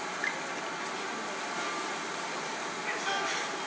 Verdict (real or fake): real